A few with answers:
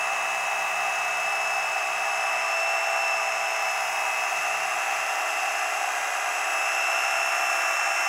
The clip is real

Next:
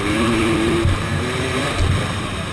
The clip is fake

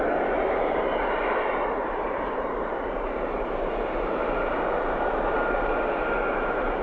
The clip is fake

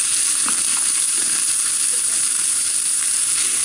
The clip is fake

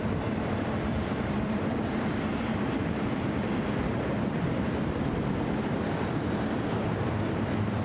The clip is fake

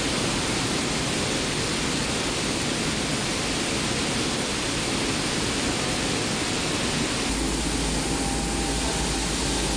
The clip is real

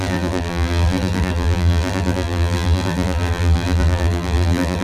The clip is fake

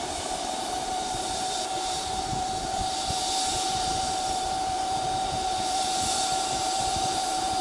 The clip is fake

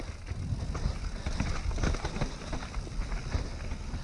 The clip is real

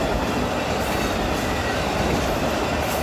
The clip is real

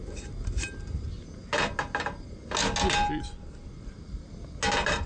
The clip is real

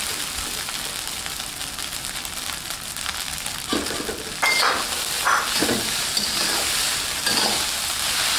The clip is real